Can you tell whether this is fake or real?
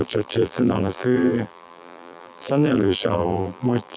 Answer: fake